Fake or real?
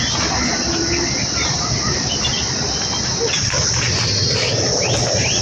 real